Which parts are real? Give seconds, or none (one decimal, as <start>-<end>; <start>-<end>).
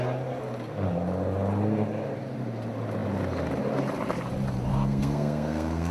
0.0-4.7